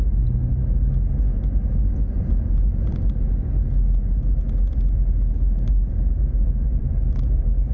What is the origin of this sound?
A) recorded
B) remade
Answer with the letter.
A